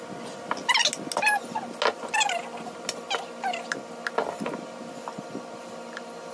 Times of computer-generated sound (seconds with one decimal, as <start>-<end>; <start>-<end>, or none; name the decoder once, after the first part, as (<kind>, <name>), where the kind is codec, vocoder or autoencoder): none